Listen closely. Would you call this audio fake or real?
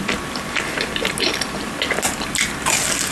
real